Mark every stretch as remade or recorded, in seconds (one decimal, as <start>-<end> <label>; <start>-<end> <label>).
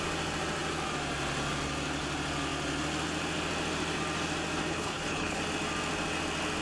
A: 0.0-4.7 recorded; 4.7-5.4 remade; 5.4-6.6 recorded